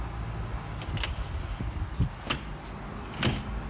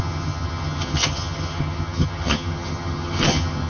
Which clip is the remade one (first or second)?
second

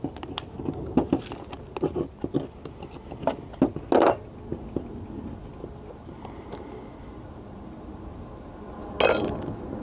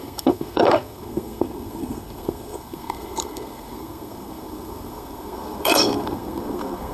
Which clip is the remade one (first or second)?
second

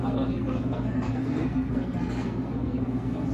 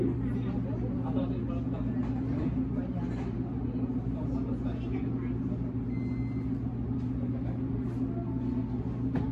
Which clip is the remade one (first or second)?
first